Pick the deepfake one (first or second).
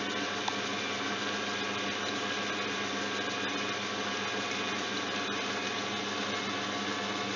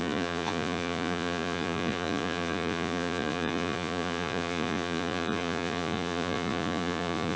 second